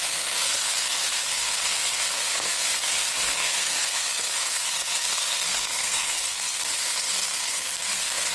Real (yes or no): no